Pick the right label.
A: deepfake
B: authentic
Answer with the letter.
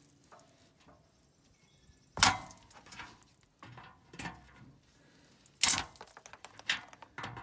B